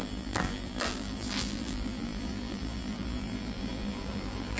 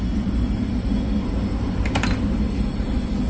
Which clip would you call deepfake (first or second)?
first